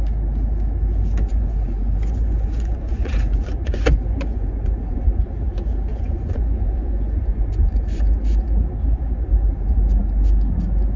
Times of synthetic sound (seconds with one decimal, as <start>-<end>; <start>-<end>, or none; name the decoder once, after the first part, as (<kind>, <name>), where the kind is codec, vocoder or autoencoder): 1.3-5.2 (vocoder, Vocos); 5.9-8.4